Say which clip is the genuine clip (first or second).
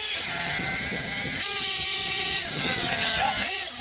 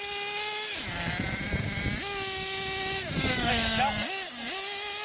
second